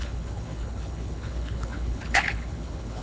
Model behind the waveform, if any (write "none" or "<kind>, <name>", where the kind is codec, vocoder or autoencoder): codec, HILCodec